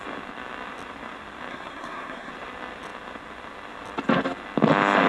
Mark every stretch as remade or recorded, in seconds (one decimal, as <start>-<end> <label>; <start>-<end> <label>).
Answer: 0.0-1.5 recorded; 1.5-2.3 remade; 2.3-5.1 recorded